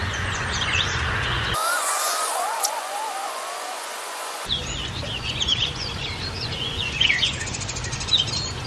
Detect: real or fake fake